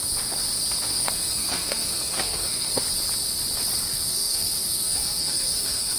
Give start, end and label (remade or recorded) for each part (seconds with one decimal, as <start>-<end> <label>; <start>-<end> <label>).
0.0-0.9 recorded; 0.9-2.8 remade; 2.8-3.9 recorded; 3.9-6.0 remade